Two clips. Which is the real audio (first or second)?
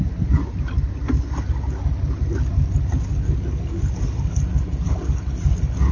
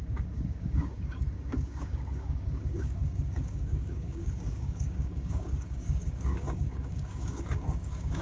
first